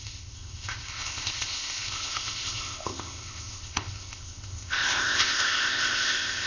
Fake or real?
fake